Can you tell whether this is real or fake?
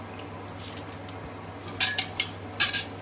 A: real